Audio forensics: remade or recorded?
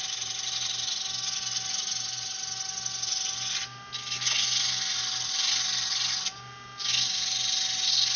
recorded